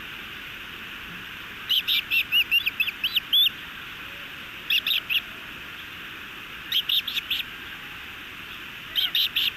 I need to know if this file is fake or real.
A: real